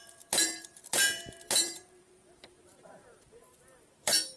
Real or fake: fake